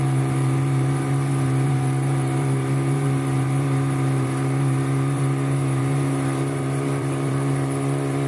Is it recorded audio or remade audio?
remade